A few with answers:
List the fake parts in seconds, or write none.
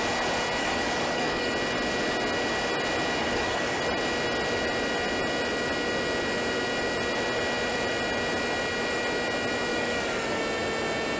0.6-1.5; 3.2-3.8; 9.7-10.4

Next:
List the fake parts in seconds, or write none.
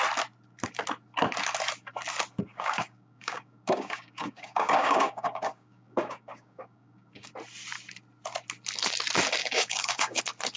2.5-7.3; 9.4-10.2